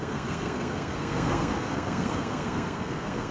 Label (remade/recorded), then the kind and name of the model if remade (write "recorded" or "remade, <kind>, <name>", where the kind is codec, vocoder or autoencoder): remade, codec, SNAC